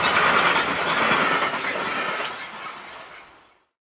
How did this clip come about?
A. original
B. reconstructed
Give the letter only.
A